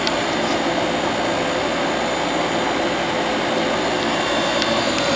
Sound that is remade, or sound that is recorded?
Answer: recorded